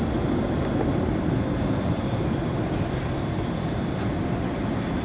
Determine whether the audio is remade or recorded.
recorded